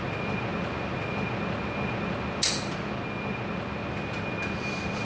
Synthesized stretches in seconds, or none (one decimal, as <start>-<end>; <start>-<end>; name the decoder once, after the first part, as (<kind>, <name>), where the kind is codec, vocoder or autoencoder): none